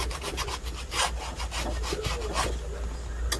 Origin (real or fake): real